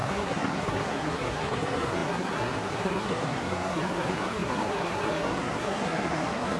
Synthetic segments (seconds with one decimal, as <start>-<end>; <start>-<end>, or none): 0.0-6.6